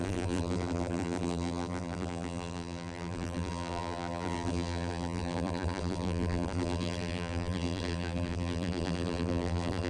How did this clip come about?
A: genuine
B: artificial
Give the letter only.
B